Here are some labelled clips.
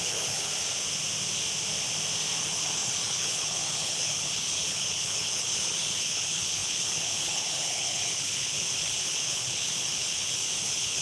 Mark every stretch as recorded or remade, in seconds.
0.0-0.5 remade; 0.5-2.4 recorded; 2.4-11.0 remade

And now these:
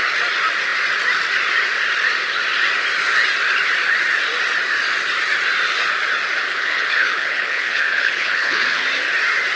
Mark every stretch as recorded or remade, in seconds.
0.0-6.5 recorded; 6.5-8.8 remade; 8.8-9.6 recorded

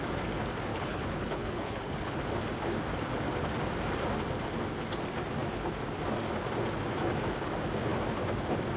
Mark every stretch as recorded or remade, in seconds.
0.0-0.7 recorded; 0.7-2.3 remade; 2.3-8.8 recorded

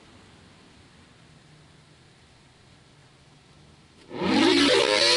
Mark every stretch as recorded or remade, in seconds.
0.0-5.2 recorded